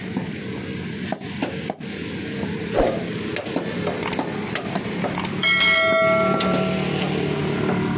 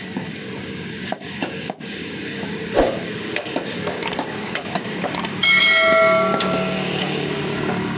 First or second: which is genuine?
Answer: first